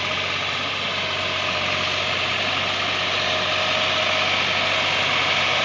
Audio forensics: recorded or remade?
recorded